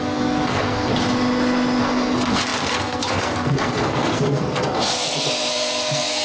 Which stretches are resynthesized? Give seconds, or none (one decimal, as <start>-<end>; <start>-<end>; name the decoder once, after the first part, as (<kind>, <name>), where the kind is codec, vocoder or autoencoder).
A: 0.0-0.9 (codec, SNAC); 1.8-6.2